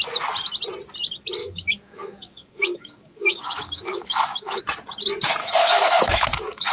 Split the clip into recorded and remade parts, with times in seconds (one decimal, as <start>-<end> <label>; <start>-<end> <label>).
0.0-1.4 recorded; 1.4-4.6 remade; 4.6-5.4 recorded; 5.4-6.7 remade